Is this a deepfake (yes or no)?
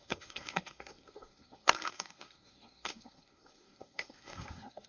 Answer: yes